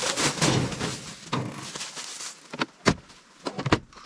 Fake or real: real